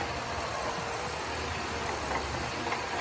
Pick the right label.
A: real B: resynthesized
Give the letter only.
A